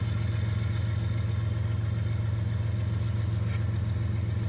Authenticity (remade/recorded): recorded